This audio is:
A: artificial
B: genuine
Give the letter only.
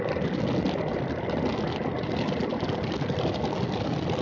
B